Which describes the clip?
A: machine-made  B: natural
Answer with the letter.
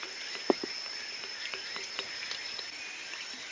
B